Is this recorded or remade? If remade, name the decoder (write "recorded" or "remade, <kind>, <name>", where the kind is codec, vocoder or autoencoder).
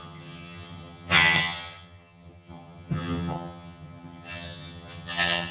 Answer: remade, vocoder, HiFi-GAN